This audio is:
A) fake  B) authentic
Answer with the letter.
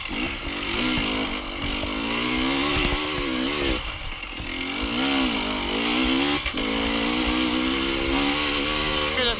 B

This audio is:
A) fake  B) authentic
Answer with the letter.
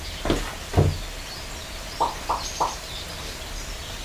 B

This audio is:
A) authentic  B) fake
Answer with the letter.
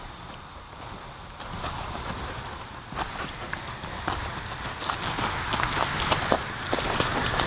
A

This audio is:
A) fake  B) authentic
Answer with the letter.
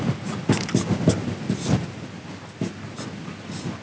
B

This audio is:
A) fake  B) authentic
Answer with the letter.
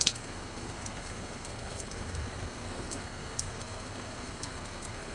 A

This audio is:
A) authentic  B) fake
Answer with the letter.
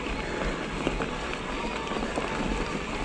A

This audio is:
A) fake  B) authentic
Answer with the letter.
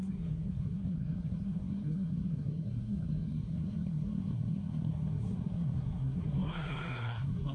A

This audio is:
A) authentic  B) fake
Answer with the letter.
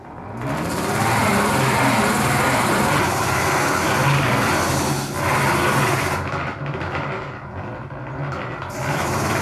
A